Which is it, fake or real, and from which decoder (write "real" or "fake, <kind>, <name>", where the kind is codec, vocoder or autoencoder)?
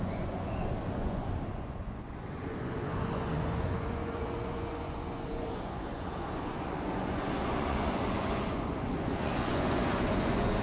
fake, vocoder, Vocos